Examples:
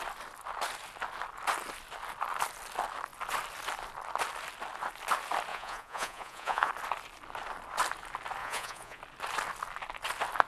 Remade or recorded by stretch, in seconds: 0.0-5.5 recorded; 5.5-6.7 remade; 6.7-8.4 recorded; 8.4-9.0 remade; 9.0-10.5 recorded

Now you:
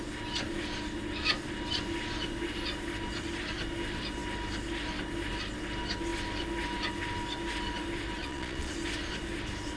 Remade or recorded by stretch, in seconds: 0.0-8.2 recorded; 8.2-8.7 remade; 8.7-9.8 recorded